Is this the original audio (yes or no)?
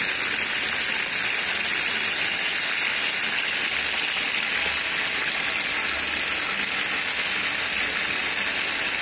yes